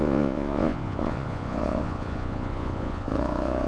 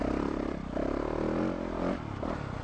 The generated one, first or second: first